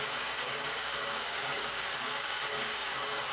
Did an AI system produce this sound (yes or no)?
yes